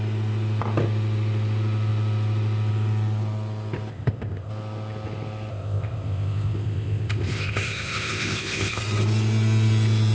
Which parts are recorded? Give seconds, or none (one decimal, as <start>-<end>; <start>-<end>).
0.0-3.9; 4.5-5.5; 8.8-10.1

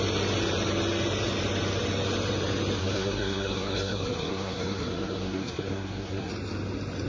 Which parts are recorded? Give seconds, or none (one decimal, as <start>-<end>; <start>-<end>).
0.0-2.8; 6.3-7.1

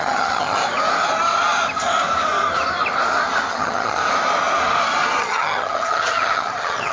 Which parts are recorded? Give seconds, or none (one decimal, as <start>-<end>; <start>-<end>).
0.6-3.5; 4.0-5.2

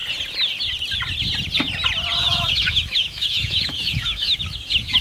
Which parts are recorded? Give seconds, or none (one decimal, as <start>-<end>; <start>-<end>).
0.0-2.2

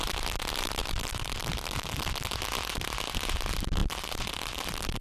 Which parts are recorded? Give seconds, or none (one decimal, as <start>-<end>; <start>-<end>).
0.0-0.8; 2.2-3.8

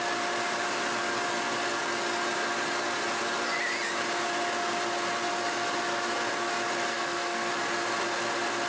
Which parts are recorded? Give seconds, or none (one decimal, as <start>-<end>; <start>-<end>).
0.0-6.9; 7.5-8.7

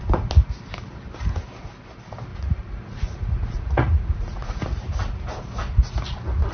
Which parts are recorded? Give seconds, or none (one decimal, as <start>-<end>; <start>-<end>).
0.0-2.3; 4.8-6.5